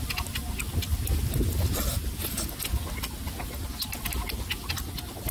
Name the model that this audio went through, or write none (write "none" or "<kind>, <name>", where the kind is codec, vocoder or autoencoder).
none